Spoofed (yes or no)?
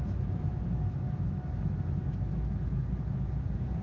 yes